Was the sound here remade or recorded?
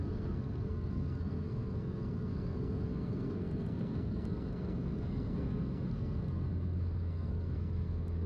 remade